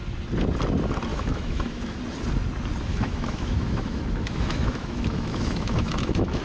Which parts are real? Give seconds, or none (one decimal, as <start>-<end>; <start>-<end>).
0.0-1.1; 2.0-2.9